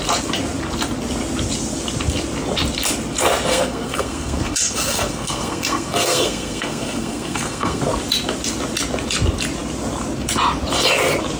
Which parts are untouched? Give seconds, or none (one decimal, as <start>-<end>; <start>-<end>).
0.0-3.5; 7.8-11.4